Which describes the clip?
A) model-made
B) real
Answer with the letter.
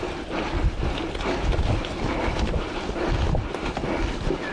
B